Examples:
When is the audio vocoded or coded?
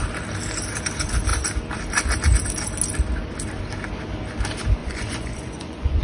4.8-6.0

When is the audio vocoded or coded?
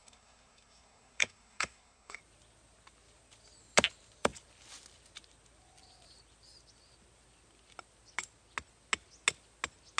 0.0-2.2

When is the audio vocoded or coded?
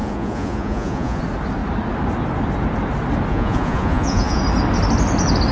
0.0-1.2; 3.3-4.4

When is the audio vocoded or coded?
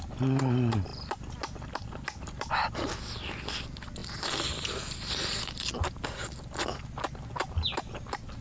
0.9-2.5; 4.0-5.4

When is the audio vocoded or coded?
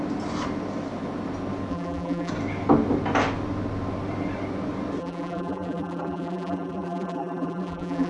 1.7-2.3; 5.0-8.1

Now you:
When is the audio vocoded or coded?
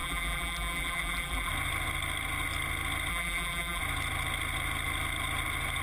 0.0-1.5; 3.1-3.8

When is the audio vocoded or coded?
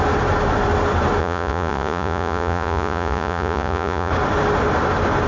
1.2-4.1